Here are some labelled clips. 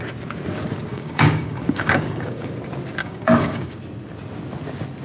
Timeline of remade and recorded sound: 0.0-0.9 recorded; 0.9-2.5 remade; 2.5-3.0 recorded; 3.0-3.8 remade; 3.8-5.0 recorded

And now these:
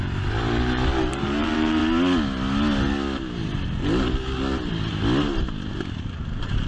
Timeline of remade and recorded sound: 0.0-1.8 remade; 1.8-5.7 recorded; 5.7-6.7 remade

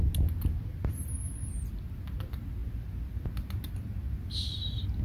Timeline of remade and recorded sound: 0.0-5.0 recorded

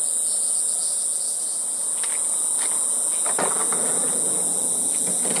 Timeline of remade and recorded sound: 0.0-5.4 recorded

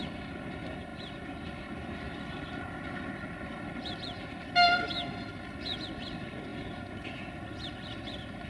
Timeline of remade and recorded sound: 0.0-6.5 recorded; 6.5-7.3 remade; 7.3-8.5 recorded

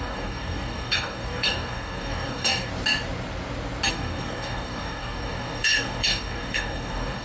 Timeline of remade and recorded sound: 0.0-2.7 remade; 2.7-3.9 recorded; 3.9-7.2 remade

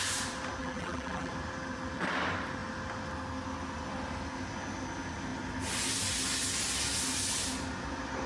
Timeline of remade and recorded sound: 0.0-0.6 recorded; 0.6-1.3 remade; 1.3-8.3 recorded